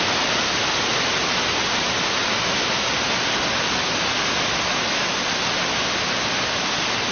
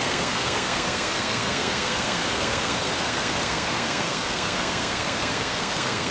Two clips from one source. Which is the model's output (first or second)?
second